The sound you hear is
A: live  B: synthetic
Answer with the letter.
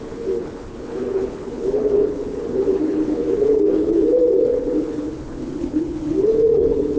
B